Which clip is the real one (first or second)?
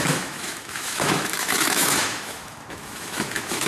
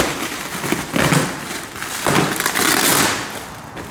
second